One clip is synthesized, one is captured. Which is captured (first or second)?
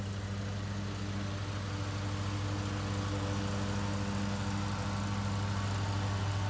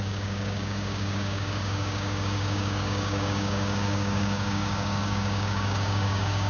first